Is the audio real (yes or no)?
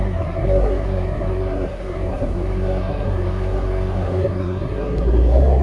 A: no